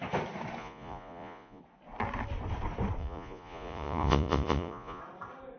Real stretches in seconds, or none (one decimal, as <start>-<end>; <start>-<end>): 0.0-0.6; 1.6-3.0; 5.0-5.6